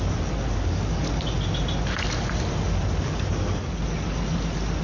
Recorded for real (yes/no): yes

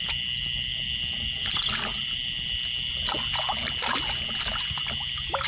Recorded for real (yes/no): yes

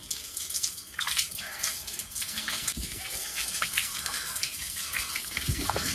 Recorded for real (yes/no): no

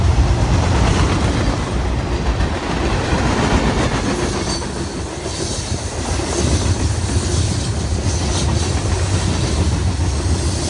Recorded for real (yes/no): yes